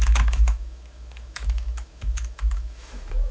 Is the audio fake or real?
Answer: fake